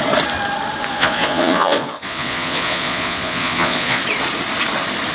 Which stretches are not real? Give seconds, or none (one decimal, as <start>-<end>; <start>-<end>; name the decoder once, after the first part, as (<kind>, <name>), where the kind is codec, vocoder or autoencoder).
0.9-4.0 (vocoder, Vocos)